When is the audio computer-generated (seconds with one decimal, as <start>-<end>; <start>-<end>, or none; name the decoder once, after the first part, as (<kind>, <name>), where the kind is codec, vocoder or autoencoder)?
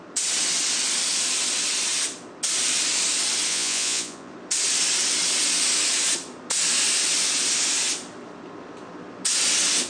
3.5-4.3 (vocoder, Vocos)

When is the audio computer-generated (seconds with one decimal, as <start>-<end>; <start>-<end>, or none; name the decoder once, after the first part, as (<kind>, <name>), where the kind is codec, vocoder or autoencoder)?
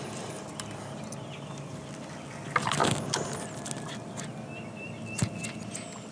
none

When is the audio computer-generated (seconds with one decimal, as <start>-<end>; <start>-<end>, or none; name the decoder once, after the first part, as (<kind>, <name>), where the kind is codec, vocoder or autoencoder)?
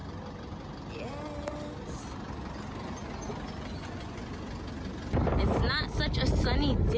3.8-4.3 (vocoder, Vocos)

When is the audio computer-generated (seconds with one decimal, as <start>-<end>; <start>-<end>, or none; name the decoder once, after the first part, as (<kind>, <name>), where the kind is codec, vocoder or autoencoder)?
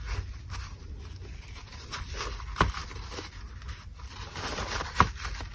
none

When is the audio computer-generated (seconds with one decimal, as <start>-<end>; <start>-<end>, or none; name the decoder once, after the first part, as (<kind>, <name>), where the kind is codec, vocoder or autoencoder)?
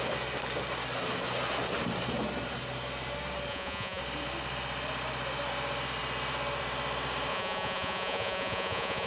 3.5-4.0 (vocoder, Vocos); 7.3-9.1